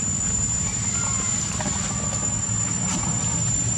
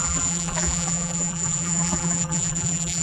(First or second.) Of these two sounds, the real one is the first